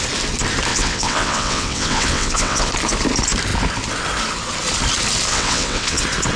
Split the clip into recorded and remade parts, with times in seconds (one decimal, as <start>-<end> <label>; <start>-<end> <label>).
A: 0.0-0.7 recorded; 0.7-2.7 remade; 2.7-5.3 recorded; 5.3-6.0 remade; 6.0-6.4 recorded